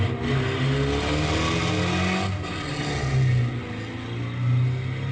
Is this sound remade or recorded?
recorded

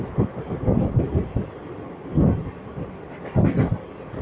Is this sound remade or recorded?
recorded